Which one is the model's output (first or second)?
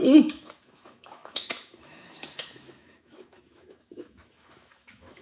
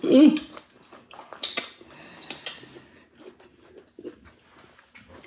first